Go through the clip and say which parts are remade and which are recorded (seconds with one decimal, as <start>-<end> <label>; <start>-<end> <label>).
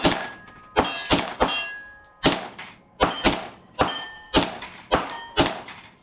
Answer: 0.0-6.0 recorded